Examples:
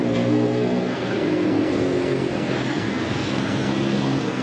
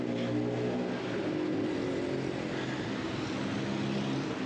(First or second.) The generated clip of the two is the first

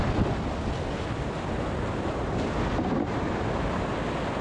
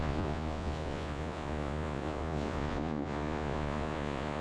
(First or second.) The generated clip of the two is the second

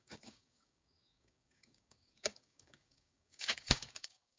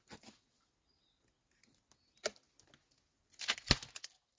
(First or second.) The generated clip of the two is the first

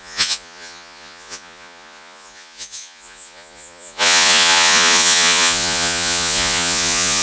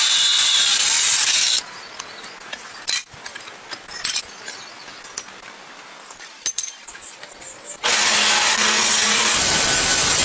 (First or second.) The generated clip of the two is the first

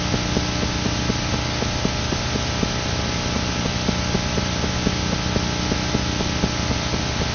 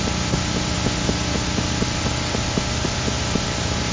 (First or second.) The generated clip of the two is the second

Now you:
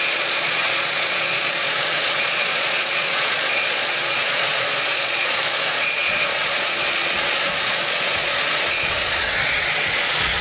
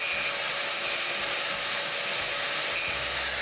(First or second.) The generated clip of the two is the first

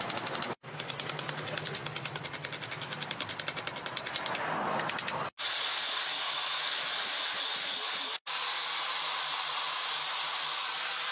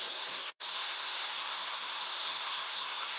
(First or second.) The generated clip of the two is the second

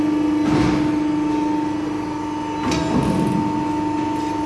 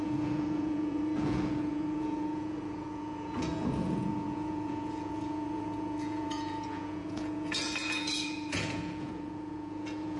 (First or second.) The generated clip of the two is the second